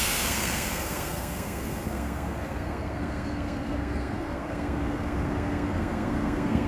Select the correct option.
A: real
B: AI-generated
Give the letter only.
B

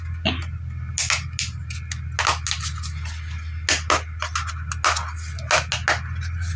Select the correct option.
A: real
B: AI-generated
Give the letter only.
A